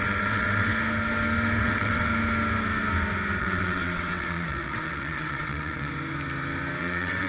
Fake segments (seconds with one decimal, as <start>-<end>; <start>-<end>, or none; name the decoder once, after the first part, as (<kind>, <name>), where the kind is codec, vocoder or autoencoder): 0.0-0.7 (vocoder, WaveNeXt); 1.6-2.1; 3.4-5.9; 6.8-7.3